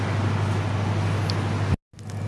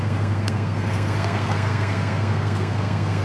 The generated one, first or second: second